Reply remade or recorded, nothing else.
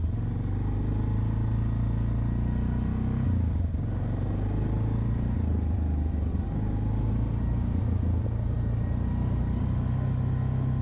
recorded